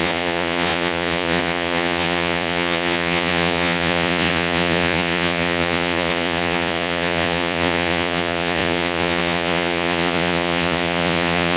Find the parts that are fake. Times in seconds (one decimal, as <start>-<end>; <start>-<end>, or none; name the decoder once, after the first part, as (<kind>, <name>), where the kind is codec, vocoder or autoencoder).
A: 0.0-11.6 (vocoder, Vocos)